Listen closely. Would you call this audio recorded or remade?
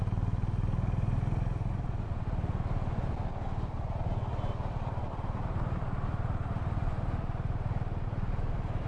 recorded